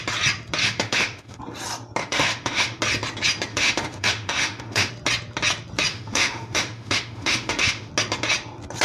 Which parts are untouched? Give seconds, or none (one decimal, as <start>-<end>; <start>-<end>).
0.0-0.6; 1.4-2.0; 2.8-3.5; 4.9-5.9; 7.9-8.8